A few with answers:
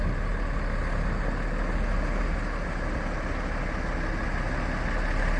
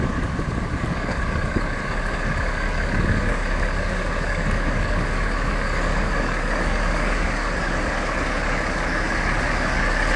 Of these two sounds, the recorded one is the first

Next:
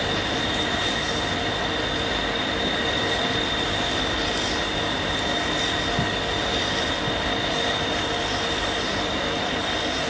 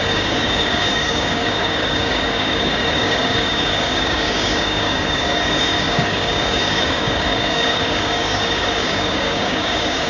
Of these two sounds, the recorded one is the first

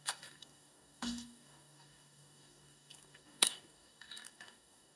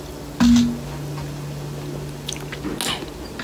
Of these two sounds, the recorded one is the second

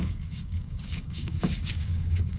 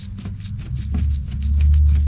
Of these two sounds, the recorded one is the second